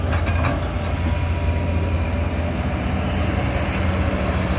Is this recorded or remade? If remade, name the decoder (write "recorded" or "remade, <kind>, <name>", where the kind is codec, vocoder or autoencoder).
recorded